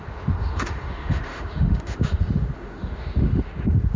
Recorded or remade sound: remade